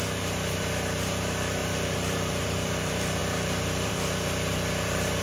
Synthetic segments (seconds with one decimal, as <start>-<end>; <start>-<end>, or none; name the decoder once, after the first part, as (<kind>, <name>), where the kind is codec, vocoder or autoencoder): 0.0-5.2 (vocoder, BigVGAN v2)